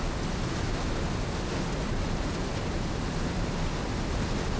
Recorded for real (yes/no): yes